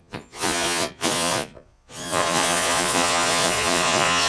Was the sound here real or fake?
fake